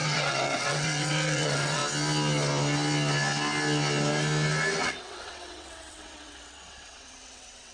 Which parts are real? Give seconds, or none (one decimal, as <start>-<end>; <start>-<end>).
1.8-4.8